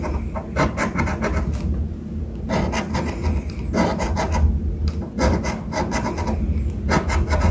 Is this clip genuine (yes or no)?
yes